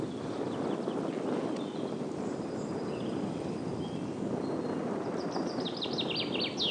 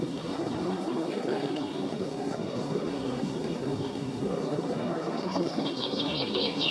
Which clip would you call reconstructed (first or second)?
second